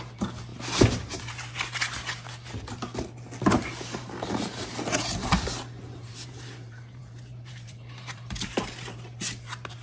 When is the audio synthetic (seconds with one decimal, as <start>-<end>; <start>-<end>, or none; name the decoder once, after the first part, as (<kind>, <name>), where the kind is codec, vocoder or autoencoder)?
0.0-0.5 (vocoder, BigVGAN v2); 3.7-9.8